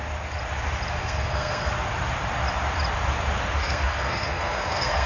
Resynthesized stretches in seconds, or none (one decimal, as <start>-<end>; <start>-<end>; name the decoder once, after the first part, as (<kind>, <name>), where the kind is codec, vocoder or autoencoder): 1.0-1.7 (codec, SNAC); 3.6-5.1